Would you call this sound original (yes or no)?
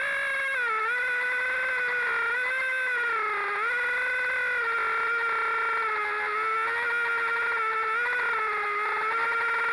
yes